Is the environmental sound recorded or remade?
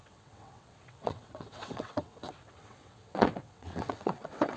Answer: remade